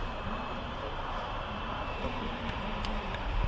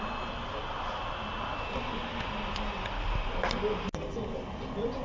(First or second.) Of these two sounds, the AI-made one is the first